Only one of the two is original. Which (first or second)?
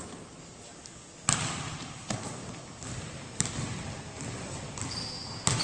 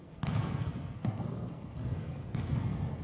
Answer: first